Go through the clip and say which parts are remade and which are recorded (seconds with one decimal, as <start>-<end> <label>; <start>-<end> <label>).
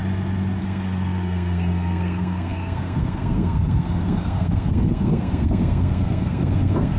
0.0-0.6 recorded; 0.6-7.0 remade